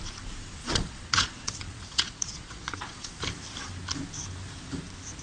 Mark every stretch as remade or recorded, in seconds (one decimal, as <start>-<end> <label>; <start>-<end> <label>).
0.0-0.6 recorded; 0.6-3.1 remade; 3.1-5.2 recorded